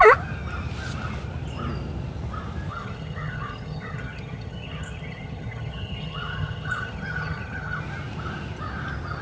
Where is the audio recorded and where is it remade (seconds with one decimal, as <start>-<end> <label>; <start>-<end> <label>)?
0.0-2.7 recorded; 2.7-7.8 remade; 7.8-9.2 recorded